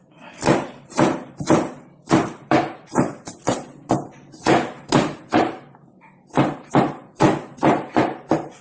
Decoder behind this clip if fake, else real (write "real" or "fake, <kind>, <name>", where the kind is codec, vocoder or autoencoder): fake, vocoder, BigVGAN v2